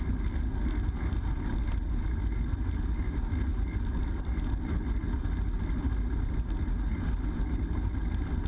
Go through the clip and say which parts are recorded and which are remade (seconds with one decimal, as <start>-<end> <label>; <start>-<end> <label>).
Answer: 0.0-8.5 recorded